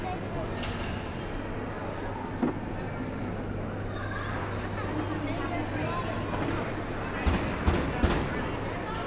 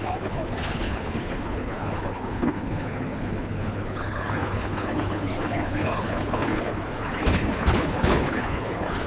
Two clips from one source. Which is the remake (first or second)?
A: second